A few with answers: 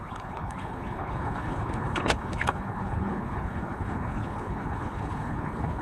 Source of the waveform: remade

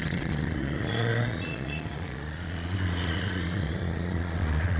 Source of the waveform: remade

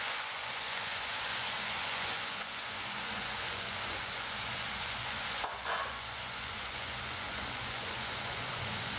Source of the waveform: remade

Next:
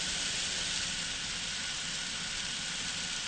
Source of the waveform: recorded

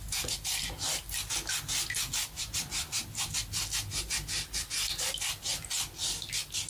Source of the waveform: recorded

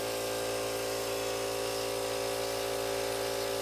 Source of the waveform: recorded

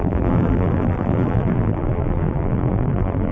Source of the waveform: remade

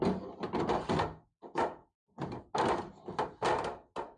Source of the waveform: recorded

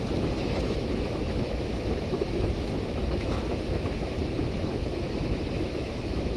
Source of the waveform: remade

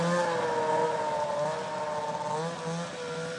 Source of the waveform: recorded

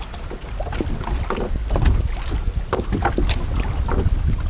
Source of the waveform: recorded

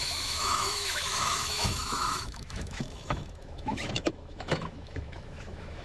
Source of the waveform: remade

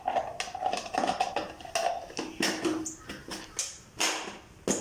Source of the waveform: recorded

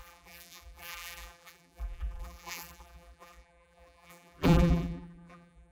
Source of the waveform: remade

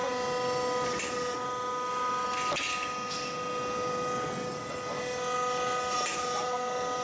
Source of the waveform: recorded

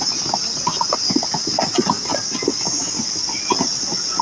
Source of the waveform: recorded